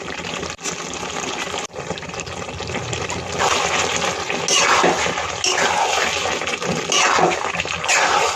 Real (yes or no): yes